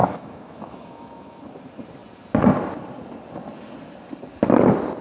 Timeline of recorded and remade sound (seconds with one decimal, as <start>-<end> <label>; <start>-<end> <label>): 0.0-1.4 remade; 1.4-5.0 recorded